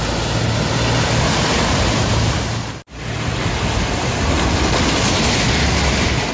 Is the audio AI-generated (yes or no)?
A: no